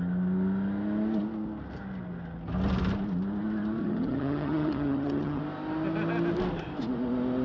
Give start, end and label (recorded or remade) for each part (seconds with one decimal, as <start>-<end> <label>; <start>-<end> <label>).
0.0-3.8 recorded; 3.8-5.4 remade; 5.4-7.4 recorded